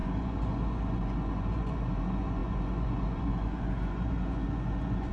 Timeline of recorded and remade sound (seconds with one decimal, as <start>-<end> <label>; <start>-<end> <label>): 0.0-5.1 remade